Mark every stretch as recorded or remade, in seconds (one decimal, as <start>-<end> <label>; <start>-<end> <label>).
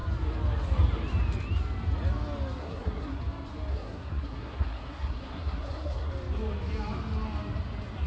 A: 0.0-2.6 recorded; 2.6-3.2 remade; 3.2-3.7 recorded; 3.7-6.1 remade; 6.1-8.1 recorded